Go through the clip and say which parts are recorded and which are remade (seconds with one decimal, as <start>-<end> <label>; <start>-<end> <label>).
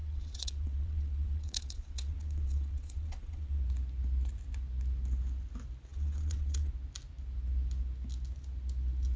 0.0-3.6 remade; 3.6-5.9 recorded; 5.9-6.7 remade; 6.7-9.2 recorded